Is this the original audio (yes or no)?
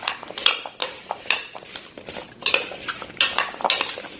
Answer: yes